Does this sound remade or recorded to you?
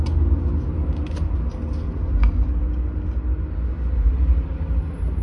recorded